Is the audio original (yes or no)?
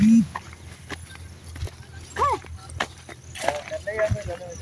yes